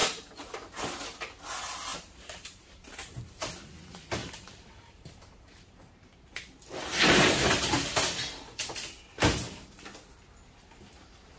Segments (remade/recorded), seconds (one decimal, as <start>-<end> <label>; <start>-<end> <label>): 0.0-0.5 remade; 0.5-1.9 recorded; 1.9-3.5 remade; 3.5-4.2 recorded; 4.2-6.0 remade; 6.0-11.4 recorded